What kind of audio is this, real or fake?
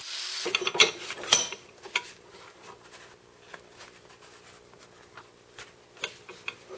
real